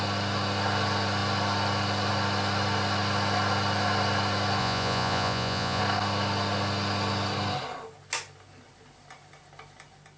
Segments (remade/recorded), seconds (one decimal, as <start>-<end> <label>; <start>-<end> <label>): 0.0-4.6 recorded; 4.6-5.8 remade; 5.8-10.2 recorded